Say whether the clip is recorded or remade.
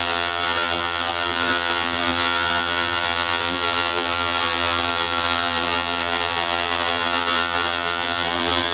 remade